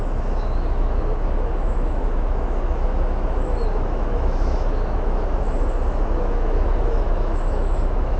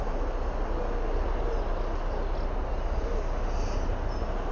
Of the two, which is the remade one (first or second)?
first